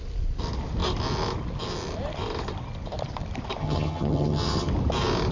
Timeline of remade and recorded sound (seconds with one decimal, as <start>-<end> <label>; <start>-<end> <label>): 0.0-3.6 recorded; 3.6-4.7 remade; 4.7-5.3 recorded